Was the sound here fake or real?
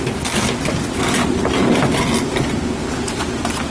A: real